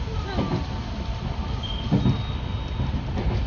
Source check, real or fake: real